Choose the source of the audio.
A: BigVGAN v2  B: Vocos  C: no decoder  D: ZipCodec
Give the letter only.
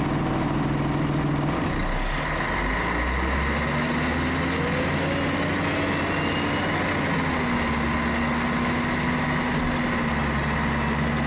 C